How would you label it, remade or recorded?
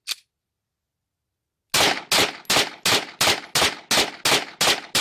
recorded